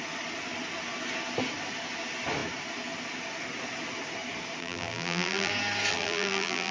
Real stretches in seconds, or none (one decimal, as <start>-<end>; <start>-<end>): 0.0-4.6; 5.5-5.9